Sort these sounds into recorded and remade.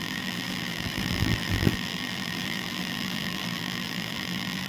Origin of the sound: remade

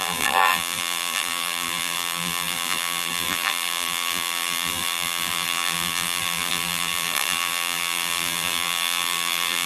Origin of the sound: remade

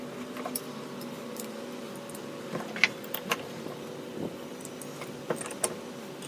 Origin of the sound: recorded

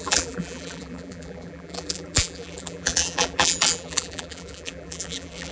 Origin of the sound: remade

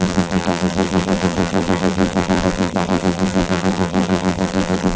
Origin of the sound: remade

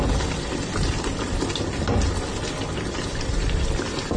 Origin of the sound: recorded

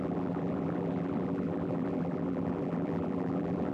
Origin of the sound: remade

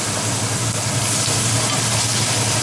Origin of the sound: recorded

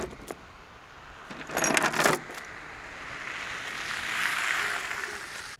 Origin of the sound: recorded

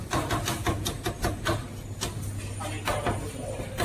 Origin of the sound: recorded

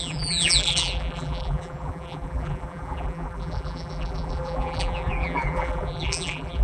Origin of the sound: remade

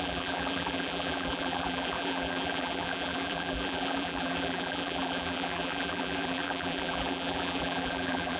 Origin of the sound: remade